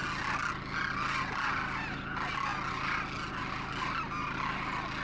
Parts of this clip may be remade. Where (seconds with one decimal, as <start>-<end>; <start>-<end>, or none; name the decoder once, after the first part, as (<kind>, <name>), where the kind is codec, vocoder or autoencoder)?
none